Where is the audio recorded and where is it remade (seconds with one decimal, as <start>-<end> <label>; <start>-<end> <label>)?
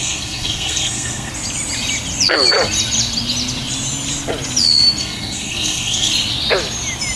0.0-1.3 remade; 1.3-5.0 recorded; 5.0-6.1 remade; 6.1-7.2 recorded